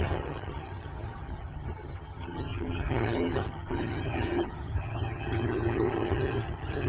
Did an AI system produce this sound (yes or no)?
yes